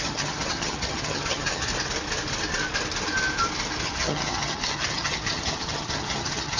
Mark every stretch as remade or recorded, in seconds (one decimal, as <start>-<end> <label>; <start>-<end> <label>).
0.0-1.7 remade; 1.7-3.8 recorded; 3.8-6.6 remade